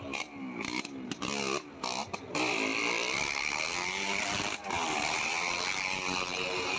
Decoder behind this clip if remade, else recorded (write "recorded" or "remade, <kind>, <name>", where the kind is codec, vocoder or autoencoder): recorded